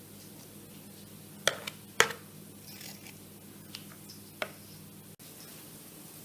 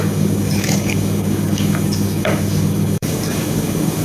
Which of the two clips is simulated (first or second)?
second